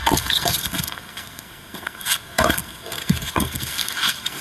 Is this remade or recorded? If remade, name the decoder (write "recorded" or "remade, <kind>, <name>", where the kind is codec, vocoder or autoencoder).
remade, codec, SNAC